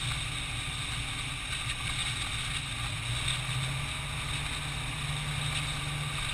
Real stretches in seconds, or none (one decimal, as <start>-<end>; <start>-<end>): 0.0-6.3